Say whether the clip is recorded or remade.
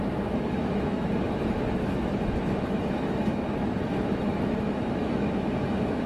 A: remade